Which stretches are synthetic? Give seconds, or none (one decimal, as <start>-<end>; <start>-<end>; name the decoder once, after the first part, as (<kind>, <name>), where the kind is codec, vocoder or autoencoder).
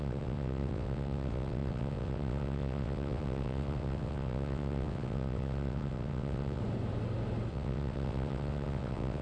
0.0-6.6 (vocoder, WaveNeXt); 7.5-9.2